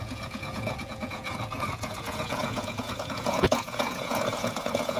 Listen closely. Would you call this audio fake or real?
fake